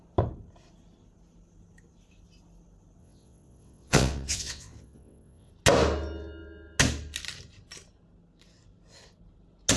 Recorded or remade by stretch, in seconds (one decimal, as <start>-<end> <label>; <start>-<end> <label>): 0.0-3.0 recorded; 3.0-5.5 remade; 5.5-9.8 recorded